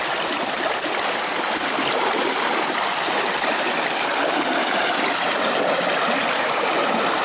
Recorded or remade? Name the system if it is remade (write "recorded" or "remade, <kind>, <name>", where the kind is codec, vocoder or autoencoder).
recorded